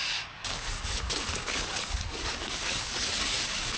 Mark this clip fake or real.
fake